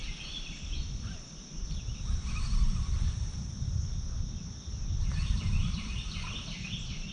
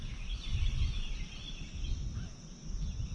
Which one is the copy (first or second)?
first